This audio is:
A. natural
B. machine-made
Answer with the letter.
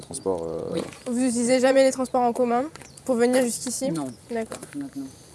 B